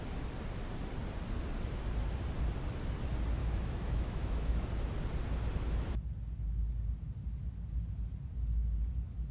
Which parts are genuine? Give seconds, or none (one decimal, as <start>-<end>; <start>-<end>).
0.0-3.4; 4.7-9.3